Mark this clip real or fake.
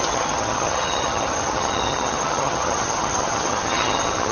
fake